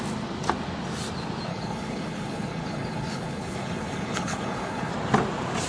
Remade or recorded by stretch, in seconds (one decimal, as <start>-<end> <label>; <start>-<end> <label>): 0.0-1.5 recorded; 1.5-4.9 remade; 4.9-5.7 recorded